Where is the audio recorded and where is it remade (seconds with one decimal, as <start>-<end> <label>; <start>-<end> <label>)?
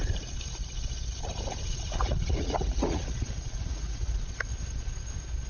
0.0-1.6 recorded; 1.6-4.2 remade; 4.2-5.5 recorded